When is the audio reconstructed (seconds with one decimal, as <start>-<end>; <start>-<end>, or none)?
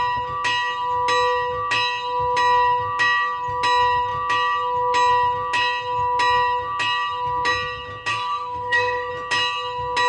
8.1-9.1